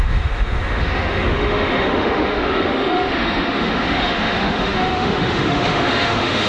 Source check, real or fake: fake